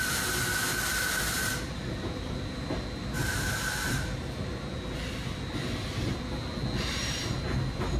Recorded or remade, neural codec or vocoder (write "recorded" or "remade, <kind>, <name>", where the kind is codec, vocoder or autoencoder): recorded